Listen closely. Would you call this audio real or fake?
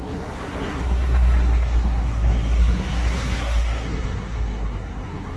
fake